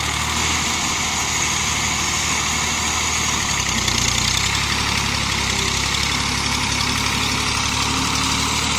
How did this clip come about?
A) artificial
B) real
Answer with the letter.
B